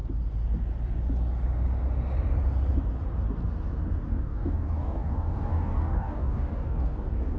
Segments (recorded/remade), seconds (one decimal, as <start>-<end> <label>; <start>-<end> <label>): 0.0-4.1 recorded; 4.1-7.4 remade